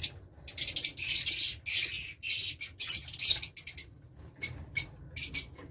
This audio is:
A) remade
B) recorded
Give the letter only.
B